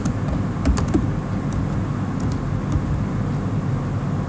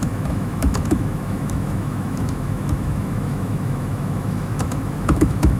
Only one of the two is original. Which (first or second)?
first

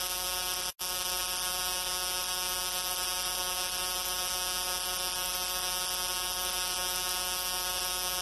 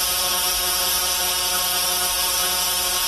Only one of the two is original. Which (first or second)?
first